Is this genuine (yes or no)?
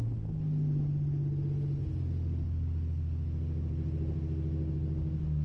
yes